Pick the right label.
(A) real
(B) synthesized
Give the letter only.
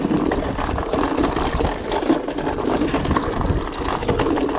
A